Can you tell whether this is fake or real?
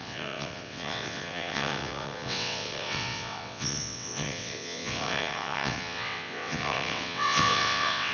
fake